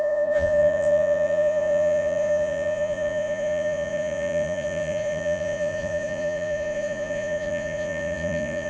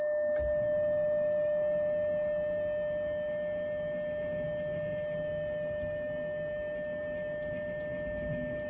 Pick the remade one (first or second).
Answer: first